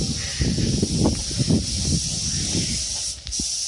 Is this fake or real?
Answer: real